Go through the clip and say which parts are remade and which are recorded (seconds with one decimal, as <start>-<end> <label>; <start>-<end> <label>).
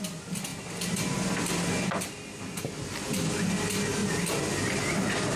0.0-5.4 recorded